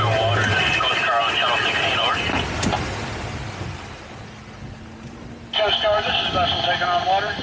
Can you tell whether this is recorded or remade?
recorded